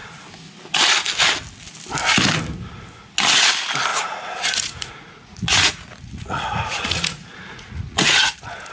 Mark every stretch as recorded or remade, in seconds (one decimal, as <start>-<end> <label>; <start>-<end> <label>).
0.0-3.9 recorded; 3.9-8.7 remade